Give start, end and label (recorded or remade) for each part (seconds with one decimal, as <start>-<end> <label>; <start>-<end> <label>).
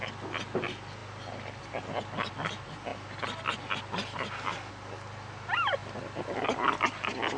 0.0-7.4 recorded